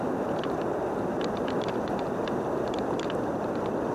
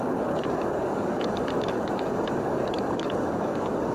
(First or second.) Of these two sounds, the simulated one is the second